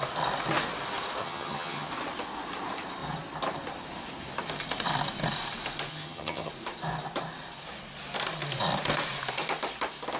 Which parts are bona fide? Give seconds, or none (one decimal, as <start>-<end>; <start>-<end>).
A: 0.0-1.2; 1.9-5.9; 6.5-10.2